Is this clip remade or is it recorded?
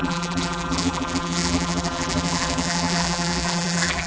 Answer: remade